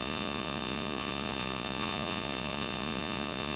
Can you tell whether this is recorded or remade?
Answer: remade